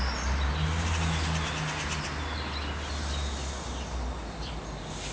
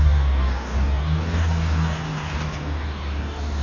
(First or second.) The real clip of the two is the first